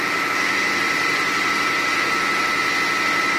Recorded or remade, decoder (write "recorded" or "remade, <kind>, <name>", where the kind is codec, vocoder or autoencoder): recorded